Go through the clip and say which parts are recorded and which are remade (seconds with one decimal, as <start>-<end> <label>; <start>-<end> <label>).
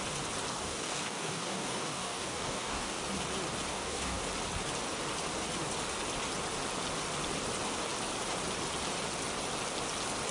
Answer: 0.0-0.5 recorded; 0.5-3.0 remade; 3.0-3.7 recorded; 3.7-4.2 remade; 4.2-10.3 recorded